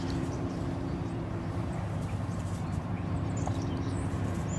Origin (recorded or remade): remade